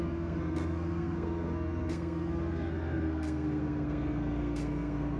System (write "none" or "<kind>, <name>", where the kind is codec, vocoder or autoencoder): codec, SNAC